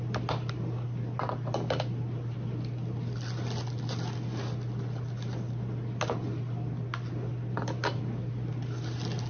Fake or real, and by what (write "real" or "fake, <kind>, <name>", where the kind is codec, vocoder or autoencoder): real